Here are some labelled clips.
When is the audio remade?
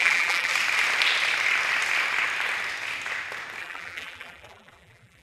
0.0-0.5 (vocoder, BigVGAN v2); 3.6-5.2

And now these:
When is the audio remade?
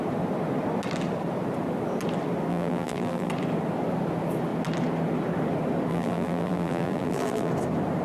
2.5-3.3 (vocoder, BigVGAN v2); 5.9-7.5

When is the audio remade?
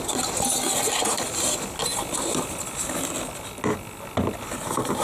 none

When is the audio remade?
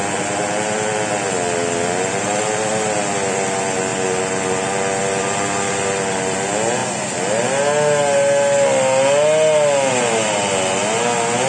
none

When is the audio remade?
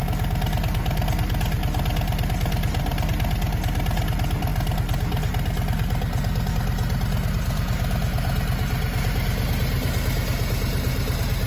none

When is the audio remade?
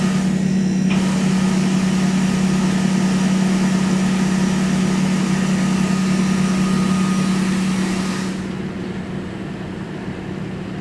none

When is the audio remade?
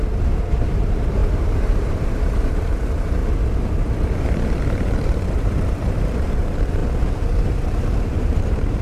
0.0-3.2 (vocoder, BigVGAN v2); 4.6-8.8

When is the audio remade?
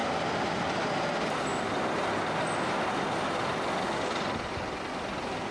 none